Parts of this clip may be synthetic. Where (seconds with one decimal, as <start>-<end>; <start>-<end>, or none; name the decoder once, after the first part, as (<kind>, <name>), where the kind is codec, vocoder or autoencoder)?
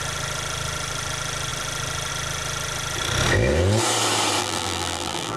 4.4-5.4 (vocoder, BigVGAN v2)